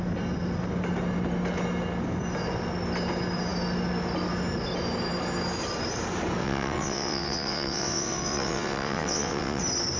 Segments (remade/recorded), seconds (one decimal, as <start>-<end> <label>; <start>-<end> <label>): 0.0-6.4 recorded; 6.4-9.6 remade; 9.6-10.0 recorded